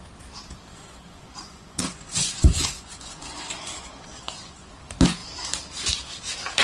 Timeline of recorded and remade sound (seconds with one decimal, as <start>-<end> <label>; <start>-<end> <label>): 0.0-0.7 recorded; 0.7-4.7 remade; 4.7-6.6 recorded